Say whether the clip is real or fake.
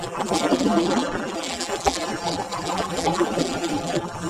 fake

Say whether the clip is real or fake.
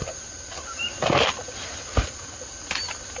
real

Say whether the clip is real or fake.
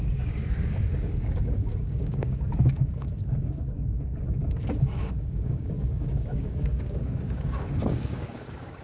fake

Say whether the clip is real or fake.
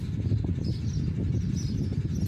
real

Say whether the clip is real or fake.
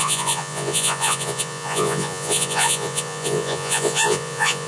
fake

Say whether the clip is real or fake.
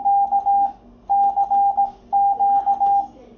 real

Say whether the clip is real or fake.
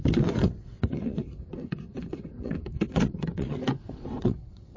fake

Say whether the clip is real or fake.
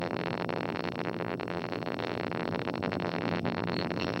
fake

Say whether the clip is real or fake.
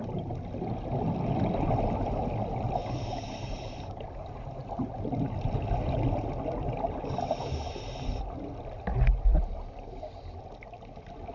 real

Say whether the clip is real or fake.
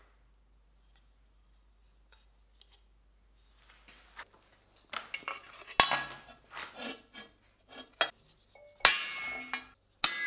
real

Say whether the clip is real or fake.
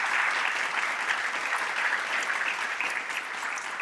real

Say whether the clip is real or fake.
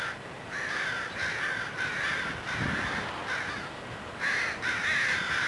real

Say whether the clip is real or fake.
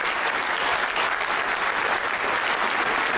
real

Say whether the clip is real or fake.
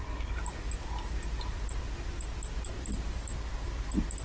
real